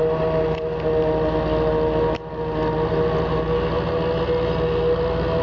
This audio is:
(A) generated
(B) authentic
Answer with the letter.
B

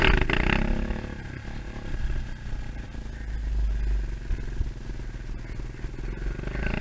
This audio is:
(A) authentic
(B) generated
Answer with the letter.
A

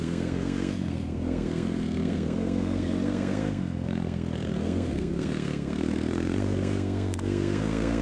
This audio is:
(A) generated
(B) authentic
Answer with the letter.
A